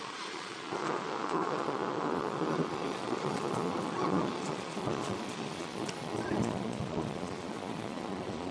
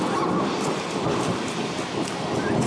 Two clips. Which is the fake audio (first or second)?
first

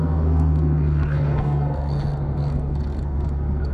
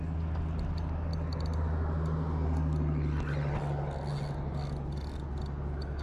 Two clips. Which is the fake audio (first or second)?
first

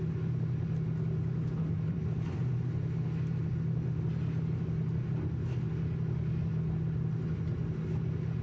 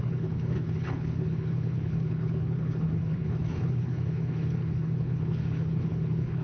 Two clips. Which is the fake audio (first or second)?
second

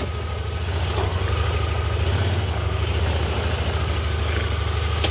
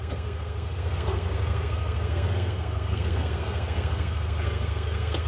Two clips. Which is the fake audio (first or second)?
second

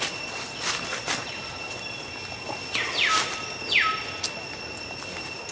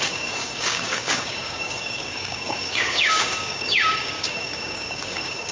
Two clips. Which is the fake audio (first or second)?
second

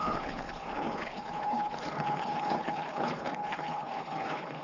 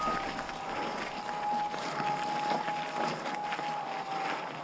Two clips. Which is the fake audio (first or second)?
first